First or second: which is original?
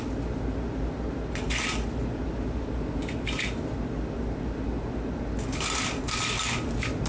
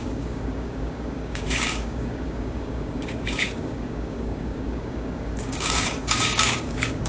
first